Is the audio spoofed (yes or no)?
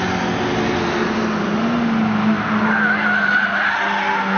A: no